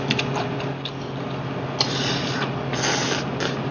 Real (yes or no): yes